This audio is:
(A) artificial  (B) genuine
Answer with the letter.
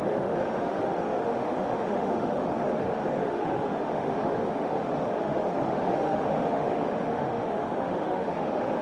A